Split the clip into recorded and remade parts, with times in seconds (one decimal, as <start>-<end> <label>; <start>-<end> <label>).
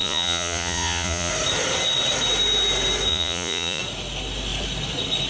0.0-1.3 remade; 1.3-3.1 recorded; 3.1-3.8 remade; 3.8-5.3 recorded